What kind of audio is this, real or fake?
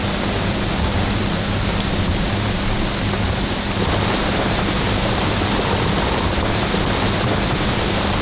real